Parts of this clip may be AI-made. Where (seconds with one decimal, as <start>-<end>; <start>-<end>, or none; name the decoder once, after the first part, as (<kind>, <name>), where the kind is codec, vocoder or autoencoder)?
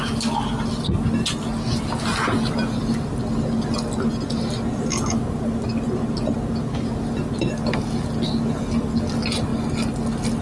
none